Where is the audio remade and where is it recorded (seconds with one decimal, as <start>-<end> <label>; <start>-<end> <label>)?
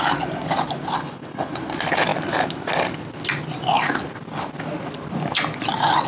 0.0-1.0 recorded; 1.0-1.5 remade; 1.5-6.1 recorded